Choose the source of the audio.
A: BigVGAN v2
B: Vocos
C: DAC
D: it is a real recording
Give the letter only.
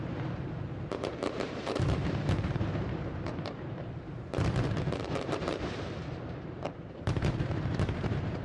A